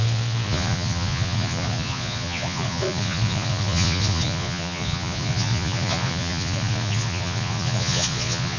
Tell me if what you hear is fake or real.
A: fake